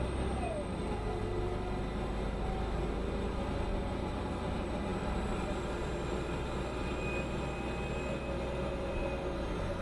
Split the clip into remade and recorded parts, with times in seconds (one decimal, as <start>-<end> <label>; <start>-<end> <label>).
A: 0.0-4.9 recorded; 4.9-6.9 remade; 6.9-9.8 recorded